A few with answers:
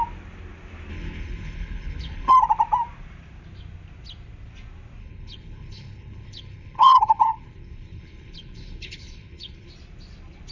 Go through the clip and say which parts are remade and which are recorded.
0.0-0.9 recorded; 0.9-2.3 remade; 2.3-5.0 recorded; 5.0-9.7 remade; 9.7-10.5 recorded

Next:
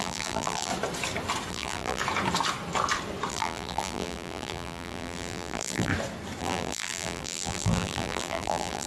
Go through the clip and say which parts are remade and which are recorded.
0.0-0.7 remade; 0.7-1.5 recorded; 1.5-2.0 remade; 2.0-3.3 recorded; 3.3-5.9 remade; 5.9-6.4 recorded; 6.4-8.9 remade

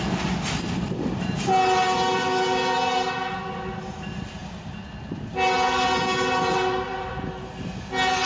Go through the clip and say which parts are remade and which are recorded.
0.0-8.3 recorded

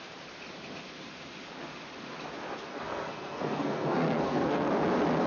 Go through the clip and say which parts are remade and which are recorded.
0.0-2.7 recorded; 2.7-4.7 remade; 4.7-5.3 recorded

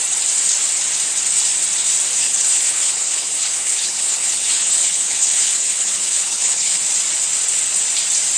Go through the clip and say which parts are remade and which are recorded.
0.0-2.2 recorded; 2.2-6.8 remade; 6.8-8.4 recorded